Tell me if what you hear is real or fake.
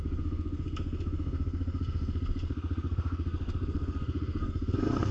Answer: fake